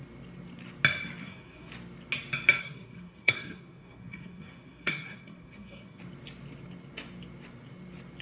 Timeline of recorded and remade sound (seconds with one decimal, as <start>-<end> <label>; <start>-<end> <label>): 0.0-1.2 recorded; 1.2-1.7 remade; 1.7-2.6 recorded; 2.6-6.0 remade; 6.0-8.2 recorded